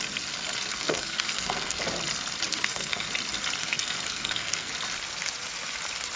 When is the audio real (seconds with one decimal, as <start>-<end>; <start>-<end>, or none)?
0.0-0.7; 1.8-2.5; 3.1-3.6; 4.7-6.2